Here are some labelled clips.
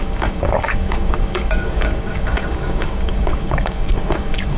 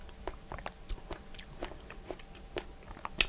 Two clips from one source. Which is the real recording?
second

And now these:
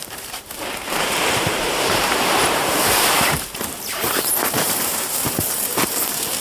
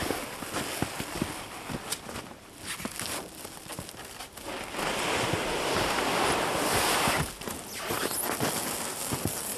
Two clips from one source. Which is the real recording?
second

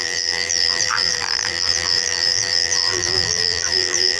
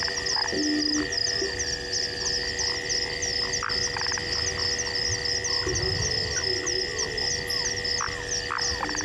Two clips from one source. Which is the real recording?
second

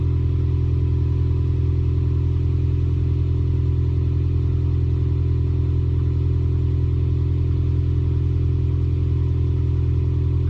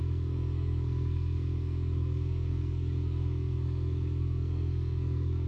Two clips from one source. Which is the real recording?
first